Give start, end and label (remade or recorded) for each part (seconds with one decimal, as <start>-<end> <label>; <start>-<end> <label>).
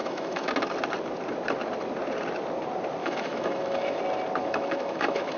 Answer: 0.0-0.5 remade; 0.5-3.0 recorded; 3.0-4.0 remade; 4.0-4.4 recorded; 4.4-5.4 remade